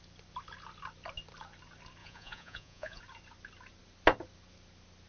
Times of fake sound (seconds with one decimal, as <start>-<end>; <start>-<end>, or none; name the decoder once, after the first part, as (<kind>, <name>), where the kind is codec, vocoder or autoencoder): 2.0-3.0 (vocoder, Vocos)